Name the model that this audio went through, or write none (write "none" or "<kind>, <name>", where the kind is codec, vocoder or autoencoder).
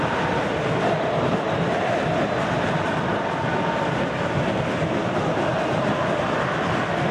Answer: none